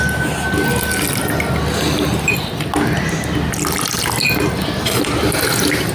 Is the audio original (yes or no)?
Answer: yes